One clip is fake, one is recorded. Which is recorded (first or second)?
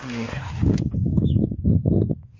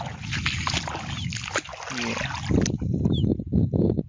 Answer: second